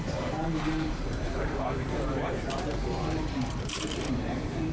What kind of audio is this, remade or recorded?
remade